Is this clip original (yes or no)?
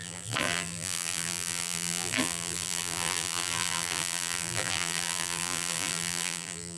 no